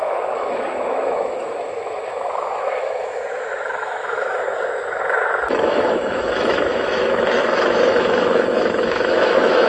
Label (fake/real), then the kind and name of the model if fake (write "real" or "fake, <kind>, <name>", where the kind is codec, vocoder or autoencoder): fake, autoencoder, DAC-VAE